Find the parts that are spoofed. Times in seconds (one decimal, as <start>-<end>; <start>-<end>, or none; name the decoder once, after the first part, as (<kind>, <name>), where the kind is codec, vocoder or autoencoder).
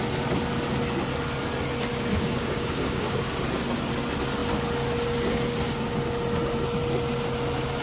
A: 1.9-3.3 (codec, DAC)